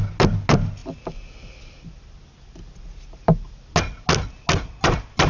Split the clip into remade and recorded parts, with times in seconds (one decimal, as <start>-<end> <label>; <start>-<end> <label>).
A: 0.0-5.3 recorded